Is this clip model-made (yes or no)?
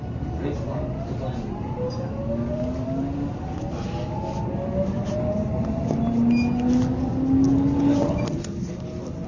no